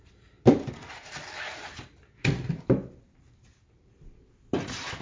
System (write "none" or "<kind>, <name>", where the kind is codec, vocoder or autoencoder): none